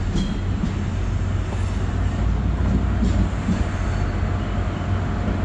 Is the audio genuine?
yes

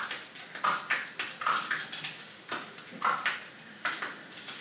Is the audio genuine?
yes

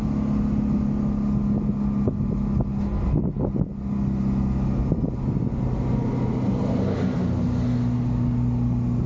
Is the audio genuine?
yes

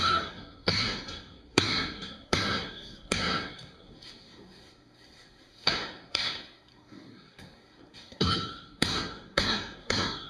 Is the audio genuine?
no